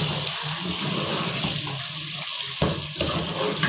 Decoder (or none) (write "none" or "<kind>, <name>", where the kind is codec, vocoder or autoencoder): none